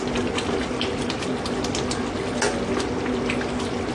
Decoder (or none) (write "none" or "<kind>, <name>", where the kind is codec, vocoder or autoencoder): none